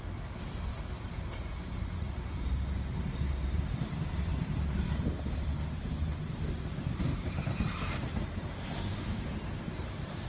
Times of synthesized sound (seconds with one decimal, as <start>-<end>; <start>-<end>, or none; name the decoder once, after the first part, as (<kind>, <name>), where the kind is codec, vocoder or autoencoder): 0.7-4.8 (vocoder, BigVGAN v2); 7.1-10.3